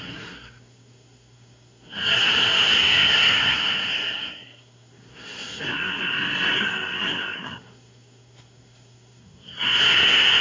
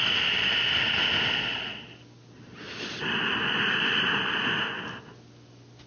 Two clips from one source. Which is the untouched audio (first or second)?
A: second